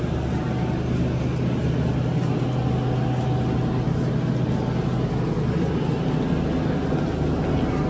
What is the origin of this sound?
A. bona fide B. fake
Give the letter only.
A